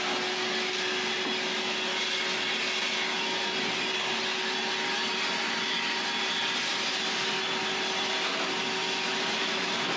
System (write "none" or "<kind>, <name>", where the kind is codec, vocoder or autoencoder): none